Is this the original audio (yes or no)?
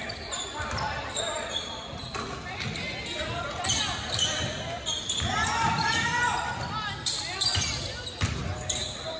yes